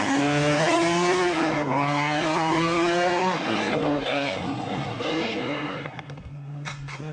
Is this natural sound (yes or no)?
no